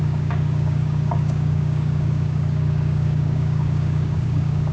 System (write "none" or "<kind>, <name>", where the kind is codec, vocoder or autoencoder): codec, DAC